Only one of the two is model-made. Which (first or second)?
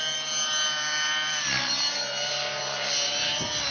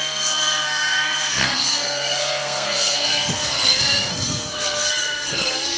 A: second